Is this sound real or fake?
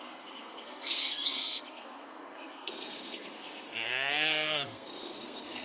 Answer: fake